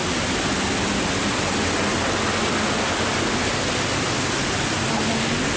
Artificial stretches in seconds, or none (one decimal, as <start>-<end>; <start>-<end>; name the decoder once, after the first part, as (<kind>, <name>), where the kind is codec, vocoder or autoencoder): none